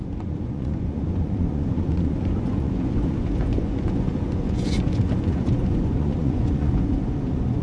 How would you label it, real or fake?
fake